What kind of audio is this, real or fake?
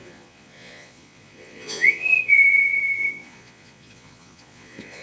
fake